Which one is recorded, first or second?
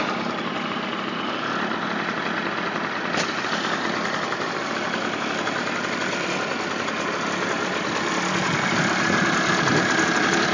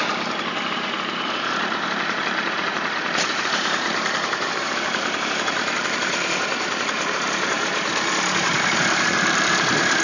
first